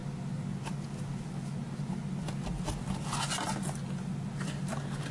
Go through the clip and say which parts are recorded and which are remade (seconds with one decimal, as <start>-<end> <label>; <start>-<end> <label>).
0.0-5.1 recorded